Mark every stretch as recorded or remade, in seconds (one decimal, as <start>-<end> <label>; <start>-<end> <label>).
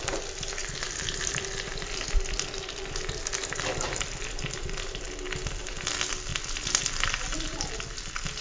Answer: 0.0-8.4 recorded